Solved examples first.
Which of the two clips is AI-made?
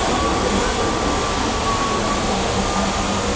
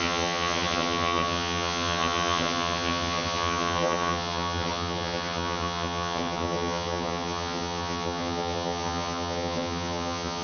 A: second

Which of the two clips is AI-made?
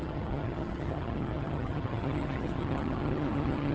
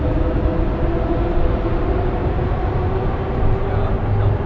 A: first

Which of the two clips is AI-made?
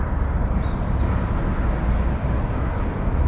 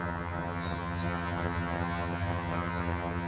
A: second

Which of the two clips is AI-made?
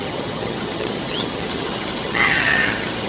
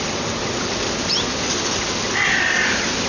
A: first